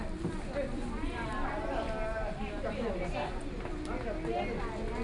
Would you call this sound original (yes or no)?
yes